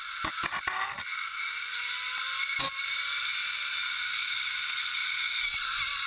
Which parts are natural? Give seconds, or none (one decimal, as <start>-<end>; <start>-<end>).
0.0-6.1